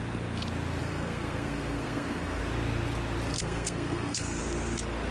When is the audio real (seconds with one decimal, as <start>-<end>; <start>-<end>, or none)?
0.0-0.8; 2.4-3.3; 4.4-5.1